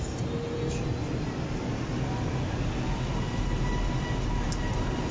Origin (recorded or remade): recorded